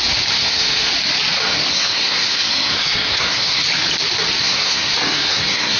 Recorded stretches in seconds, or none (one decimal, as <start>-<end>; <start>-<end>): 0.0-0.4; 0.9-1.7; 3.6-4.4